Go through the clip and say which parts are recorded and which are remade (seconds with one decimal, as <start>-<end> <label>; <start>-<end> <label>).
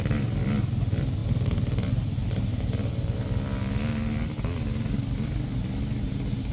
0.0-6.5 recorded